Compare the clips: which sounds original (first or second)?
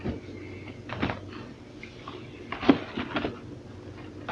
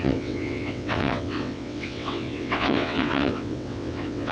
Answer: first